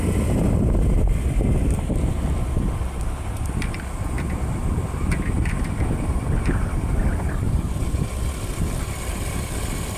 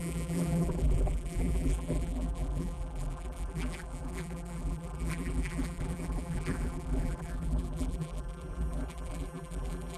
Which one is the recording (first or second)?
first